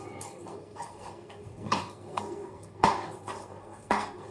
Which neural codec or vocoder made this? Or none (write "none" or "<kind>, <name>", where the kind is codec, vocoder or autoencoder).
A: codec, SNAC